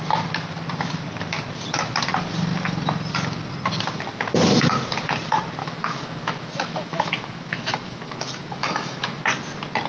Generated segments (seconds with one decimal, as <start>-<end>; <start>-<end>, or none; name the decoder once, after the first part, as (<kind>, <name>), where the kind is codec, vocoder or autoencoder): 5.6-9.2 (autoencoder, DAC-VAE)